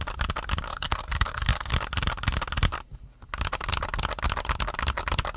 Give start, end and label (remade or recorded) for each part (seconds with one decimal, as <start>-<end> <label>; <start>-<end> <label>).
0.0-0.7 recorded; 0.7-1.7 remade; 1.7-5.4 recorded